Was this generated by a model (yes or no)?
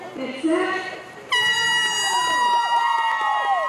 no